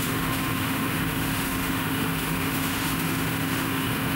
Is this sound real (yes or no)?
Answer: no